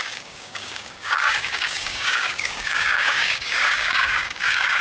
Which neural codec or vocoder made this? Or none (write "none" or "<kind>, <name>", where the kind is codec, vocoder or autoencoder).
codec, DAC